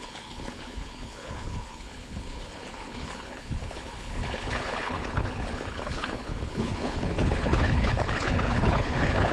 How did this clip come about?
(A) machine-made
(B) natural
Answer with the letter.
A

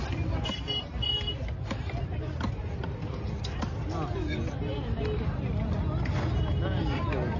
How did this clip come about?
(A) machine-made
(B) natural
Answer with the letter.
B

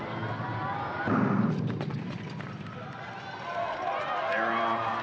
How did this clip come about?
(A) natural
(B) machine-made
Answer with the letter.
A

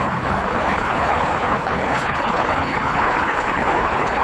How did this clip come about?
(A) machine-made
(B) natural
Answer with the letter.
A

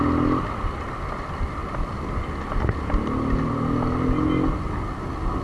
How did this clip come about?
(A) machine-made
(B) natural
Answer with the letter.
B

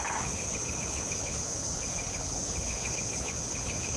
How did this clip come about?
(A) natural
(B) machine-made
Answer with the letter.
B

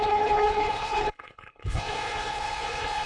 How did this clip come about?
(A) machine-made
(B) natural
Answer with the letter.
A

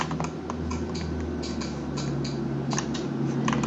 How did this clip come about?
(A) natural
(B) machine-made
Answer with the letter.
A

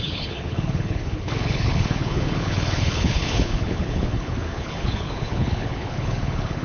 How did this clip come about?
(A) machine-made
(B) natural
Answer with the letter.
A